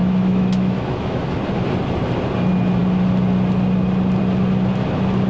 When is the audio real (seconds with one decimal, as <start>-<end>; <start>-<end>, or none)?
1.4-5.3